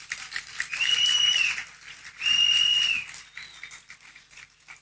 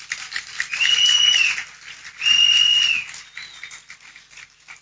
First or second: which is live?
second